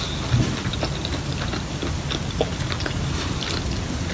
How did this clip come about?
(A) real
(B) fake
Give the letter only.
A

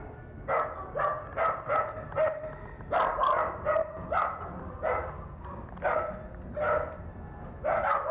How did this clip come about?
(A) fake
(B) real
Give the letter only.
B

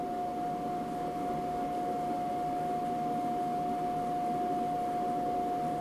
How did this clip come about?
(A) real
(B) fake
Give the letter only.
A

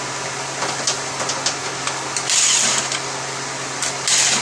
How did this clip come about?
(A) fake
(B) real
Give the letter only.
B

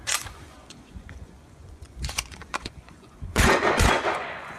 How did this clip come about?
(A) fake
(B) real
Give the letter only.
A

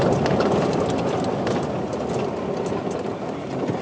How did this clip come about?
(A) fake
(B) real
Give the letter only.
B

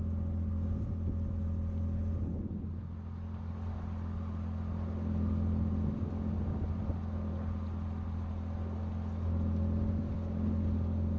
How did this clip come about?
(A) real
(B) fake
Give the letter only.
A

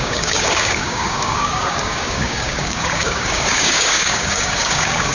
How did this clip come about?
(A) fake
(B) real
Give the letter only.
A